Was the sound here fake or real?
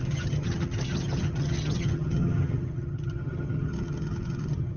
fake